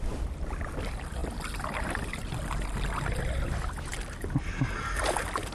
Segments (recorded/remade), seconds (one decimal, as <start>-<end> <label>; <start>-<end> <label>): 0.0-5.5 recorded

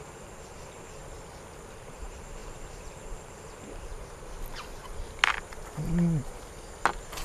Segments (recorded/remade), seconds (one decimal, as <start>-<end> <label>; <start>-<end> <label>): 0.0-1.0 remade; 1.0-1.7 recorded; 1.7-3.9 remade; 3.9-7.2 recorded

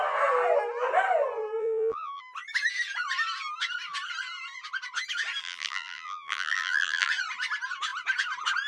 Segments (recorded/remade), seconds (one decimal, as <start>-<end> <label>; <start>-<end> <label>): 0.0-1.6 recorded; 1.6-2.2 remade; 2.2-5.4 recorded; 5.4-7.1 remade; 7.1-8.7 recorded